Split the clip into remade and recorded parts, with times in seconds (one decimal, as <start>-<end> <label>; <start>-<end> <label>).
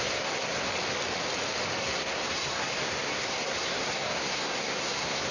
0.0-0.7 remade; 0.7-1.8 recorded; 1.8-5.3 remade